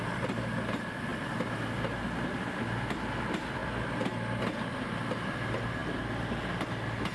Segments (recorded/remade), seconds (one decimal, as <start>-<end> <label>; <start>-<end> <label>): 0.0-7.1 recorded